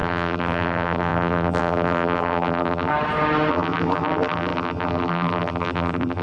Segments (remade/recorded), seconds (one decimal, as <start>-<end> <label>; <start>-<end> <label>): 0.0-2.9 remade; 2.9-3.5 recorded; 3.5-6.2 remade

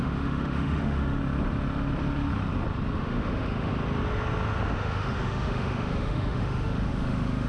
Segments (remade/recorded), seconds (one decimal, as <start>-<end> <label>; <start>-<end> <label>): 0.0-1.2 remade; 1.2-3.0 recorded; 3.0-3.7 remade; 3.7-4.7 recorded; 4.7-7.5 remade

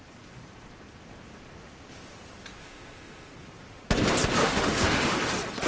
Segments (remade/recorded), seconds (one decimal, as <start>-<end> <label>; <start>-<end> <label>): 0.0-2.6 recorded; 2.6-3.3 remade; 3.3-4.4 recorded; 4.4-5.2 remade; 5.2-5.7 recorded

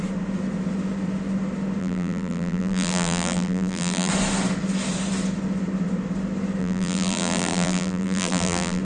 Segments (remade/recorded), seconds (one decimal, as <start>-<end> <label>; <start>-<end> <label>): 0.0-1.8 recorded; 1.8-4.1 remade; 4.1-6.6 recorded; 6.6-8.8 remade

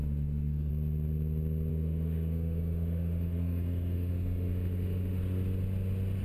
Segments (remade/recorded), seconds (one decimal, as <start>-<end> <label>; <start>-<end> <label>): 0.0-0.7 remade; 0.7-1.7 recorded; 1.7-5.2 remade; 5.2-6.2 recorded

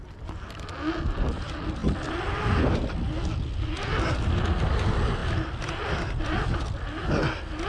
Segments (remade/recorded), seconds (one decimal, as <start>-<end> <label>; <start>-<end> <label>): 0.0-7.7 recorded